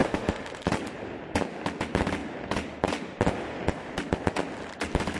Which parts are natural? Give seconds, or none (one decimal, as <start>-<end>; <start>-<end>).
0.7-5.2